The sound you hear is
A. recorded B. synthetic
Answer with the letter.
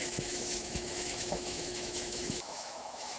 B